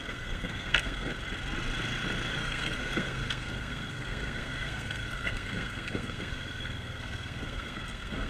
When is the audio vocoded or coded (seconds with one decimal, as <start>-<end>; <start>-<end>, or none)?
0.0-1.1; 2.3-8.3